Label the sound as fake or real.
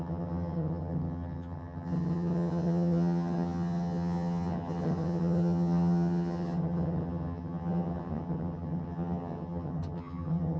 fake